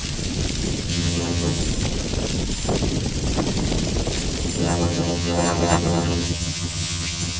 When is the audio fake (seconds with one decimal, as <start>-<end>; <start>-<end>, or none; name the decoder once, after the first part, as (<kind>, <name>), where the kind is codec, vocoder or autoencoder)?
0.9-1.6 (vocoder, HiFi-GAN); 4.6-7.4